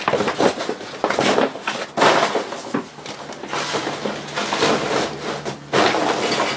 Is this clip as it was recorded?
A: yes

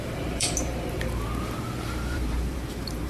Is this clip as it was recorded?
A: no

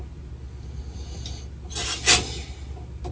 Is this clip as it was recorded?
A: yes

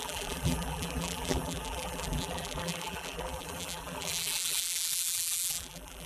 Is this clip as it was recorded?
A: no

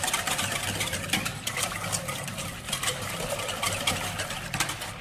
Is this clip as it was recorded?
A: yes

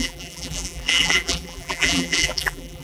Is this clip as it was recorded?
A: no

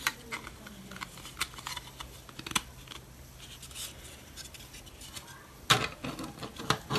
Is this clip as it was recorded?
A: yes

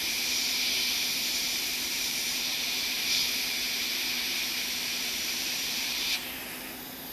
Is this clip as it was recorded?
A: no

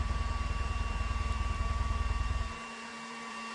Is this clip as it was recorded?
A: no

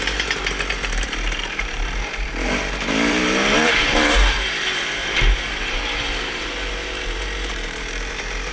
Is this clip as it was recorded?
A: no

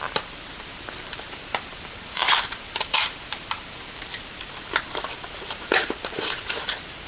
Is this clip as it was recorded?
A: no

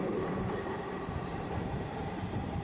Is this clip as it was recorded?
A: no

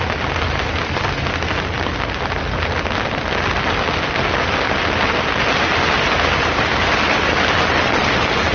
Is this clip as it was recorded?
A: yes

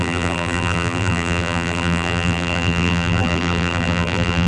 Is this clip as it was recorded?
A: no